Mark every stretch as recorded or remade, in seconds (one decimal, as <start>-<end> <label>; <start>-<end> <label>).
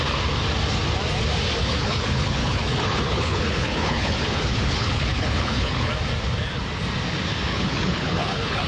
0.0-1.6 recorded; 1.6-5.9 remade; 5.9-7.5 recorded; 7.5-8.7 remade